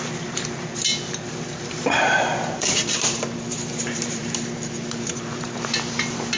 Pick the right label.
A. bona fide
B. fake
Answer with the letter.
B